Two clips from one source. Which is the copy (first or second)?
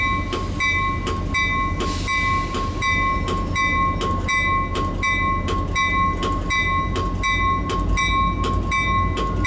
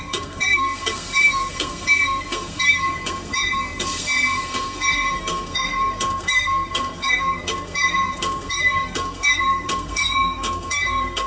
second